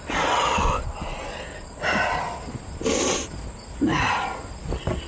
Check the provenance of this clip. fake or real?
real